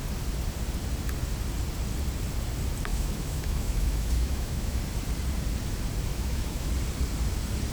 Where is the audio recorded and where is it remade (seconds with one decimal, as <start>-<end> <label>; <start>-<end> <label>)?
0.0-2.9 recorded; 2.9-4.8 remade; 4.8-6.1 recorded; 6.1-6.7 remade; 6.7-7.7 recorded